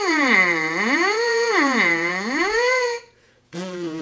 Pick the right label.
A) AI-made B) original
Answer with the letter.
A